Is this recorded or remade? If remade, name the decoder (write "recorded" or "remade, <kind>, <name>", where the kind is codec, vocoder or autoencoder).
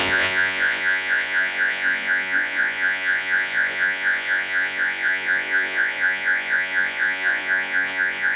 remade, vocoder, Vocos